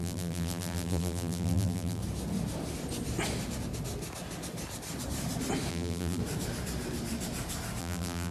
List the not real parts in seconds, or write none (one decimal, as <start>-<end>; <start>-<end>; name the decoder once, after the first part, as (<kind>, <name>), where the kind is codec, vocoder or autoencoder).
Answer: 0.0-2.0 (vocoder, BigVGAN v2); 5.7-6.2; 7.8-8.3